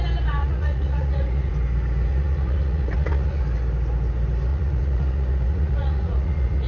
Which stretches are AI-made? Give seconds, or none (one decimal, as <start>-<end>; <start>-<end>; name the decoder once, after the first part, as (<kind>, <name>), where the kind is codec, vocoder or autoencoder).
0.4-1.5 (vocoder, Vocos); 2.1-3.4; 4.5-6.7